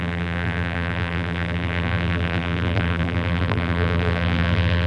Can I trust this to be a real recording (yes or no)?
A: no